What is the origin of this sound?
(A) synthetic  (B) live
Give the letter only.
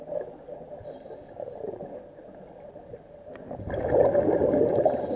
B